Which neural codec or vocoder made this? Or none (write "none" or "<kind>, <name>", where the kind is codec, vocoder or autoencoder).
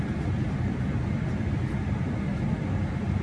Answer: none